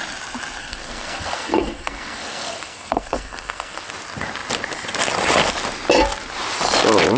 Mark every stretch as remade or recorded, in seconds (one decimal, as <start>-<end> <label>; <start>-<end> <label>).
0.0-0.6 recorded; 0.6-3.9 remade; 3.9-7.2 recorded